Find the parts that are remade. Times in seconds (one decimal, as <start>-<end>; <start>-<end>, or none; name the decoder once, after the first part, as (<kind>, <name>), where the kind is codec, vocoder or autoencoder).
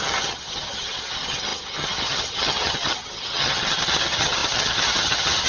0.0-5.5 (vocoder, HiFi-GAN)